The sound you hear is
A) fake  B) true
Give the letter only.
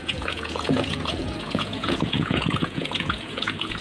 A